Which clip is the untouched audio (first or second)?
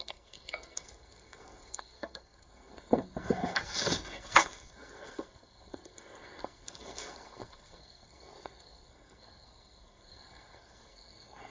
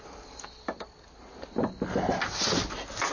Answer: second